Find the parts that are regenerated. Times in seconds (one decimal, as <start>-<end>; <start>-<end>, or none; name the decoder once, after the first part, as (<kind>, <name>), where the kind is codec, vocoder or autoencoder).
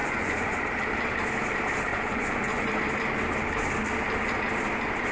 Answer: 0.0-0.6 (vocoder, Vocos); 1.9-2.7